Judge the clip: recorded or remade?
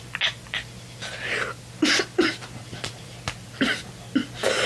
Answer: recorded